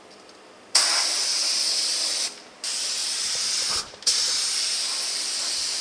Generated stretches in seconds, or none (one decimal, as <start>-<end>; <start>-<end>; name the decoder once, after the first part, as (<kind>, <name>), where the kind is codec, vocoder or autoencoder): 3.0-3.5 (vocoder, BigVGAN v2)